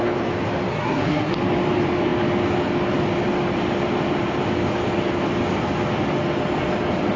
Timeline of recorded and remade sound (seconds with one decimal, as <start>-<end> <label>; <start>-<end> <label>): 0.0-0.7 recorded; 0.7-1.3 remade; 1.3-7.2 recorded

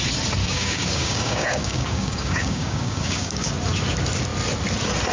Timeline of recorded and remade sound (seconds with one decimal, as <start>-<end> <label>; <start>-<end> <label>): 0.0-0.4 recorded; 0.4-3.5 remade; 3.5-5.1 recorded

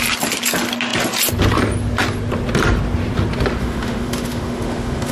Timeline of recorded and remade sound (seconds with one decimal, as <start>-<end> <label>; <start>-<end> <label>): 0.0-3.6 recorded; 3.6-5.1 remade

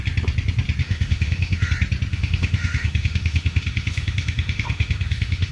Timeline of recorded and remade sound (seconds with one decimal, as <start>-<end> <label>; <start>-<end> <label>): 0.0-0.8 recorded; 0.8-1.7 remade; 1.7-2.1 recorded; 2.1-5.5 remade

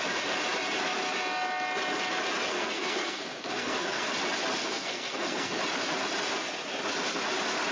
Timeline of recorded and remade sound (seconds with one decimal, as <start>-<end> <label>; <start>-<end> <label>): 0.0-2.5 recorded; 2.5-4.1 remade; 4.1-4.6 recorded; 4.6-5.6 remade; 5.6-7.7 recorded

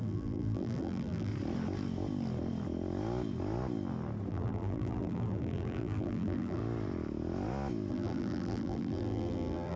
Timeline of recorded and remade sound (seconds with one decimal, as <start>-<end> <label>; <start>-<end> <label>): 0.0-1.3 remade; 1.3-4.3 recorded; 4.3-6.6 remade; 6.6-7.9 recorded; 7.9-9.8 remade

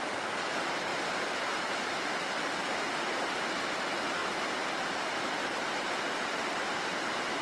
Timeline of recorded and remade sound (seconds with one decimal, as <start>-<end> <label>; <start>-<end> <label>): 0.0-7.4 recorded

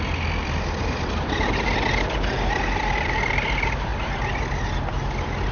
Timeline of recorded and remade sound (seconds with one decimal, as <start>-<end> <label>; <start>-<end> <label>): 0.0-5.5 recorded